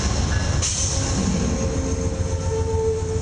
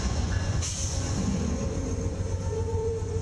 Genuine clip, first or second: first